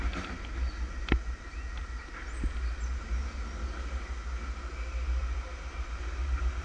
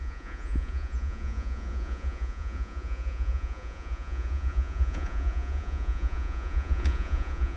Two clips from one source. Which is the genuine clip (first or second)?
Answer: first